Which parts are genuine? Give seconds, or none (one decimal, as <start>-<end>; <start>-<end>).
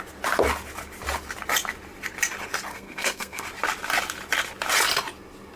0.0-2.7; 3.4-5.6